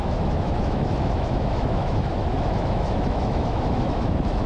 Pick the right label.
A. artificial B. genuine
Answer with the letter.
A